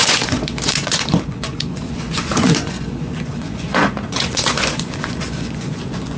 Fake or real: fake